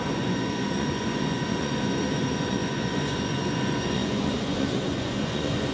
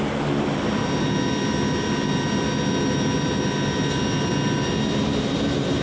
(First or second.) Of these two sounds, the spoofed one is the first